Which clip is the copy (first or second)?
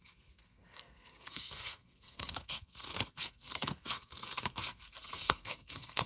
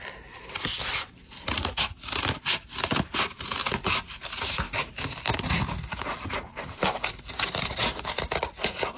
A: first